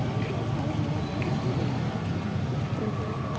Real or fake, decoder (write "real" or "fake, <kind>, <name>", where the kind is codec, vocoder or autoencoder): real